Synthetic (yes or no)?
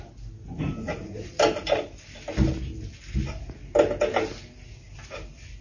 no